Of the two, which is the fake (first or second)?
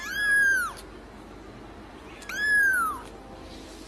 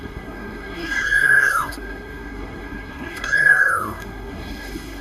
second